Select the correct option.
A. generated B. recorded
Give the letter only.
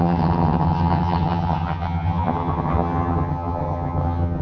A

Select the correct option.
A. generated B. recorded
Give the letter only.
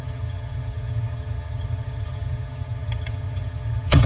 A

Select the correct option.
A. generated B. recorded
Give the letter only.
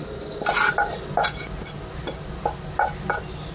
B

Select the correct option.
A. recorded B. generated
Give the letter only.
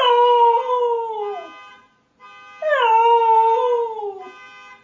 A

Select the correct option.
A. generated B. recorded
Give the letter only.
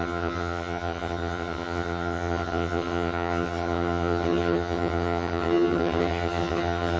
A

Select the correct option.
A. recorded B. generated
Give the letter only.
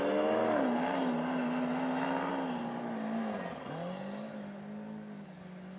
A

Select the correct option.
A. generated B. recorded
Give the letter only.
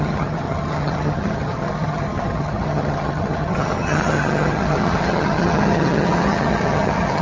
A